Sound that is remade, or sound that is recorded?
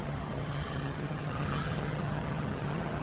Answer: remade